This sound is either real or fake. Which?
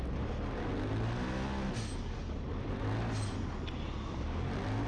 real